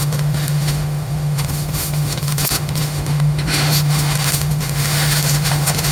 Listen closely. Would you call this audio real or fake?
fake